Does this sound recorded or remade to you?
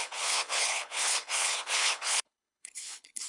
remade